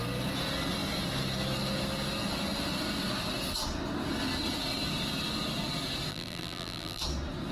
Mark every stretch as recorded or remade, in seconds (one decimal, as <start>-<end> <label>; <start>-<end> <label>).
0.0-6.1 recorded; 6.1-7.0 remade; 7.0-7.5 recorded